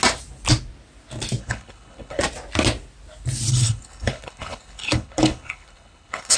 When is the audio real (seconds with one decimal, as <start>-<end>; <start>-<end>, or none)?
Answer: 0.0-1.4; 2.2-3.5